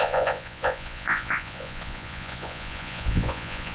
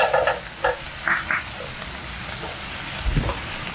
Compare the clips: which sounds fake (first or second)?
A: first